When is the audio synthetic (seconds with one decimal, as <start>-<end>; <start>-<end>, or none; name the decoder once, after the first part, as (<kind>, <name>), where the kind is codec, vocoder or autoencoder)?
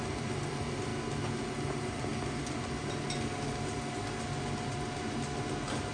0.0-0.9 (vocoder, BigVGAN v2); 1.5-2.1